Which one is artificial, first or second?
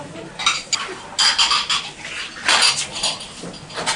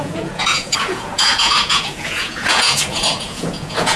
second